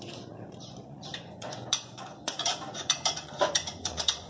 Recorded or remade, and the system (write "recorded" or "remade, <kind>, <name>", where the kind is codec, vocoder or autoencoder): remade, vocoder, Vocos